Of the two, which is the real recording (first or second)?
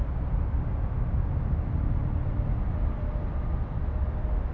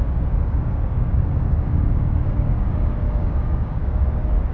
first